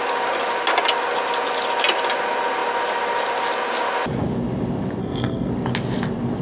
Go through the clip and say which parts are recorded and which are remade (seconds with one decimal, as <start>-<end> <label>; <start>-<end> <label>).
0.0-5.0 recorded; 5.0-5.5 remade; 5.5-6.4 recorded